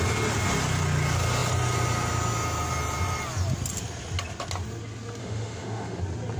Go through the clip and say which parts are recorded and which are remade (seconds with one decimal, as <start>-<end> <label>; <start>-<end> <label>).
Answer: 0.0-5.2 recorded; 5.2-6.0 remade; 6.0-6.4 recorded